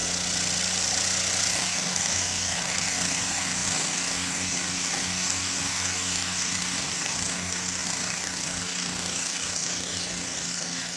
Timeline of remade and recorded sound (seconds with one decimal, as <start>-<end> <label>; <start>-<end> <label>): 0.0-1.5 recorded; 1.5-11.0 remade